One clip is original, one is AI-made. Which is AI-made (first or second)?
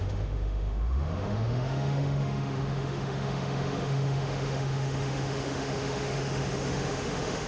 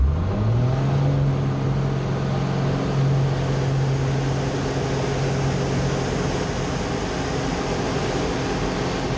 first